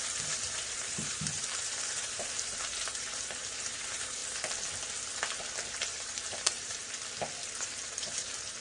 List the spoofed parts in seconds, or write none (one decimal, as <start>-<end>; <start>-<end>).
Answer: 0.0-4.2; 5.7-6.8; 7.6-8.6